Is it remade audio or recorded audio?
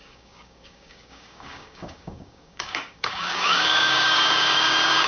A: remade